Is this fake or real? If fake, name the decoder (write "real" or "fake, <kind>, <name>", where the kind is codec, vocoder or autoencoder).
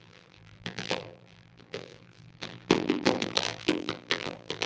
fake, vocoder, BigVGAN v2